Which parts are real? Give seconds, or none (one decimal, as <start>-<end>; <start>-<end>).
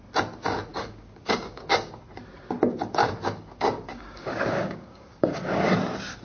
0.0-0.7; 2.0-3.0; 5.7-6.2